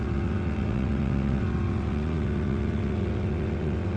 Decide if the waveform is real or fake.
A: fake